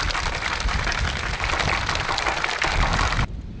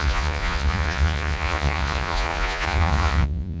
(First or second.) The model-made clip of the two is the second